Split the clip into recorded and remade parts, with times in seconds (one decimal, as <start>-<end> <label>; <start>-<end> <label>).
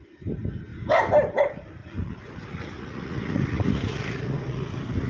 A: 0.0-1.8 recorded; 1.8-5.1 remade